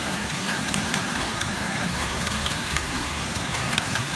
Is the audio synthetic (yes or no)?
yes